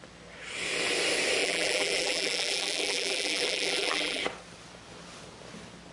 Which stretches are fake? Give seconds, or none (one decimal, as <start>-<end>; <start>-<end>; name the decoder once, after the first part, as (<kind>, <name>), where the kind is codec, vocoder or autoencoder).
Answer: 1.4-4.2 (vocoder, BigVGAN v2)